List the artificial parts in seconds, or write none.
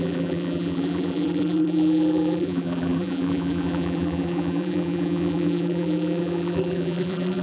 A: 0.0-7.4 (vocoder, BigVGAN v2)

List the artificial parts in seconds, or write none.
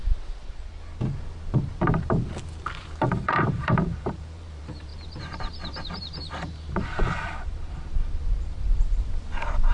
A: 0.0-0.7 (vocoder, BigVGAN v2); 2.6-9.7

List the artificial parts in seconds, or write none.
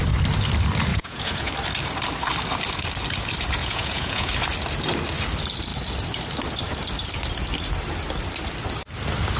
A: 0.9-1.5 (vocoder, Vocos); 3.6-4.3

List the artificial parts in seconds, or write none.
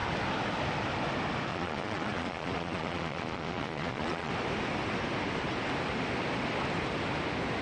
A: 1.5-4.3 (vocoder, Vocos)